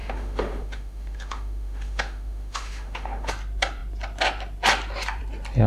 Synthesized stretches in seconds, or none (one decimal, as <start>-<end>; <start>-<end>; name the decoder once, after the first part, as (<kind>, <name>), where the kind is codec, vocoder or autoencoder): 0.0-3.3 (autoencoder, DAC-VAE)